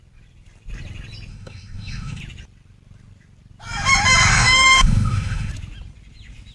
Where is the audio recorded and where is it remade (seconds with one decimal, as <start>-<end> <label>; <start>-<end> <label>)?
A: 0.0-1.3 recorded; 1.3-2.2 remade; 2.2-4.3 recorded; 4.3-5.5 remade; 5.5-6.5 recorded